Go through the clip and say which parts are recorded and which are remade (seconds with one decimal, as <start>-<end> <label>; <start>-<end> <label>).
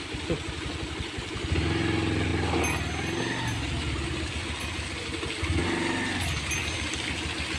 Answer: 0.0-7.6 recorded